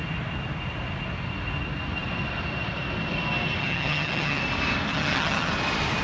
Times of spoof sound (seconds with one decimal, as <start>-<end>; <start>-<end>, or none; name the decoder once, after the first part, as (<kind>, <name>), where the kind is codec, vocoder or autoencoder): 3.6-4.4 (vocoder, HiFi-GAN); 4.9-5.5